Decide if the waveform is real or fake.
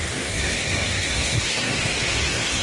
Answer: fake